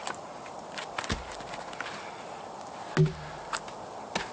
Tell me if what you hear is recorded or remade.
recorded